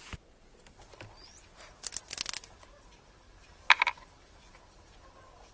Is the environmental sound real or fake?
real